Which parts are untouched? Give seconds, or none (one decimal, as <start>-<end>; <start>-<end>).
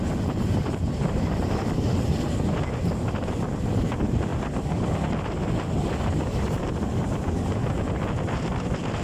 0.0-9.0